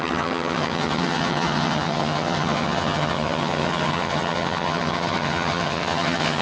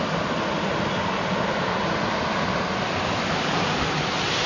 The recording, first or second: second